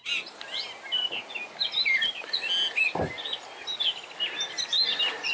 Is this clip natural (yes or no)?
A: yes